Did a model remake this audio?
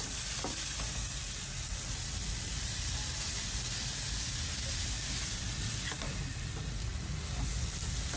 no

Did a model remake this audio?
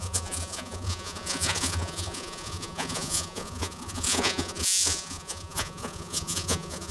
yes